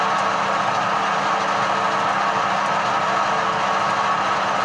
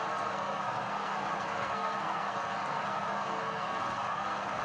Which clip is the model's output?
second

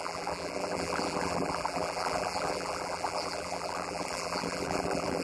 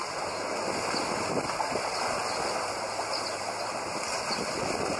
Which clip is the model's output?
first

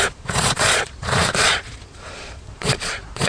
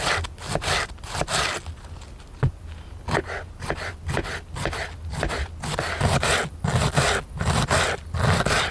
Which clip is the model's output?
first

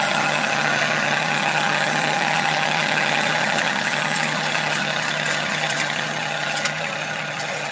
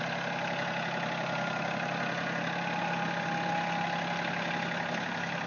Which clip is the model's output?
first